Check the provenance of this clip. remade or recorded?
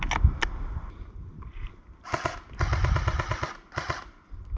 recorded